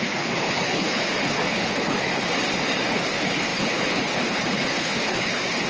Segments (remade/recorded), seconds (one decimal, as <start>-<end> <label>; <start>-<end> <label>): 0.0-2.1 remade; 2.1-2.9 recorded; 2.9-5.7 remade